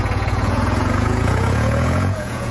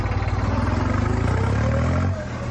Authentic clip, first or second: second